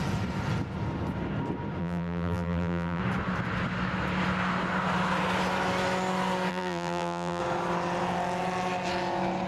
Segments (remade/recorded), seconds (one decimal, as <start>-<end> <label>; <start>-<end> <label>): 0.0-1.8 recorded; 1.8-3.0 remade; 3.0-6.5 recorded; 6.5-7.4 remade; 7.4-9.5 recorded